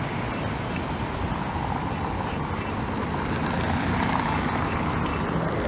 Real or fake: real